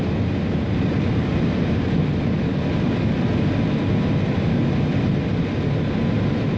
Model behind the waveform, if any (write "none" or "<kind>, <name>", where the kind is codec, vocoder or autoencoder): none